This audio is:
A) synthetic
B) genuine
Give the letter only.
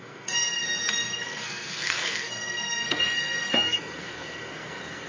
A